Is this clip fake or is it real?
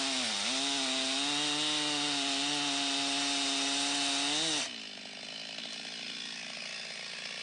real